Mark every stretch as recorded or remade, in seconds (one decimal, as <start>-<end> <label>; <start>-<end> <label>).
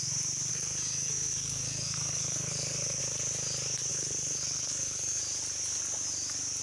0.0-0.5 recorded; 0.5-3.0 remade; 3.0-3.9 recorded; 3.9-5.2 remade; 5.2-6.6 recorded